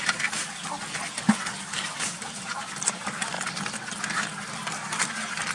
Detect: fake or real real